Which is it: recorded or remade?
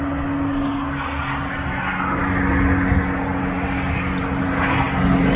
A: recorded